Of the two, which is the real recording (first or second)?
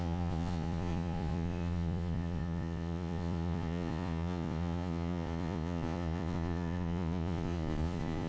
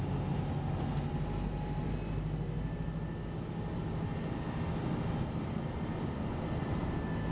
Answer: second